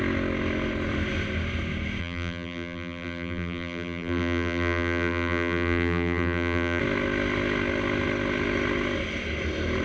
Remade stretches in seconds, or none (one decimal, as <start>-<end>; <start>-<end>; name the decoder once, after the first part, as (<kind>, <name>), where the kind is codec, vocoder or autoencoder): 2.0-6.8 (vocoder, BigVGAN v2)